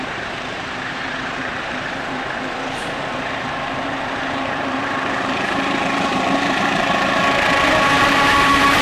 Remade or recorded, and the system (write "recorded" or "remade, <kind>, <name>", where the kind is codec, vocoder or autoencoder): remade, vocoder, BigVGAN v2